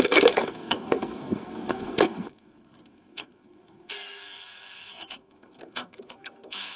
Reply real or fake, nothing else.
fake